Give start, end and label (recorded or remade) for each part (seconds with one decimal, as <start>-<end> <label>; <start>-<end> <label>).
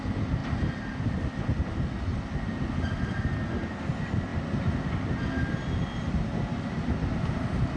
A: 0.0-7.8 recorded